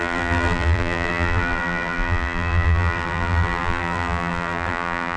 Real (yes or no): no